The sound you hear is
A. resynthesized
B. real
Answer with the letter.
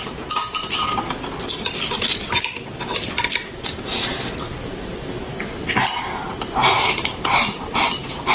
A